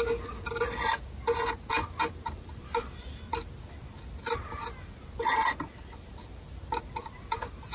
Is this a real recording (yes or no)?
yes